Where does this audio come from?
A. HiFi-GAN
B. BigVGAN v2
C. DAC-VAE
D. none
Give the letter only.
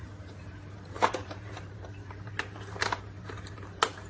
B